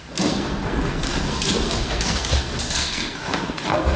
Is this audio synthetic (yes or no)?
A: yes